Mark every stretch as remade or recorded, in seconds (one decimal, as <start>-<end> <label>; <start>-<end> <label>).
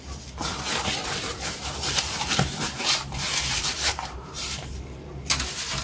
0.0-1.3 recorded; 1.3-4.8 remade; 4.8-5.8 recorded